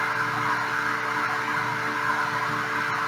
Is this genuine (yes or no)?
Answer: yes